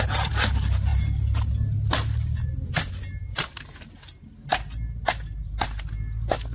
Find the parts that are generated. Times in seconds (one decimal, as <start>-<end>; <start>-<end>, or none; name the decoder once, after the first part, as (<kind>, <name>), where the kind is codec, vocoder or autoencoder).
none